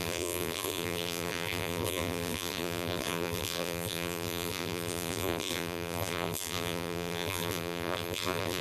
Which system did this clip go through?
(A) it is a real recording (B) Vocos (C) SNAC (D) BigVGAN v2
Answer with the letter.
D